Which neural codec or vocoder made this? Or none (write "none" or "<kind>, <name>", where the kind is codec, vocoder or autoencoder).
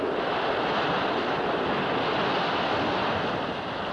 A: none